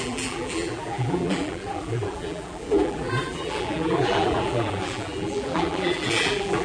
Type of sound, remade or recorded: remade